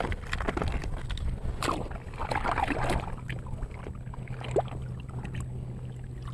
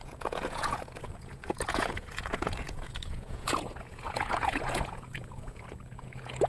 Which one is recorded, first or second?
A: first